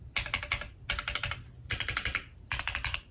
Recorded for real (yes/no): yes